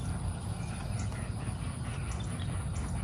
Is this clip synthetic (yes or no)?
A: no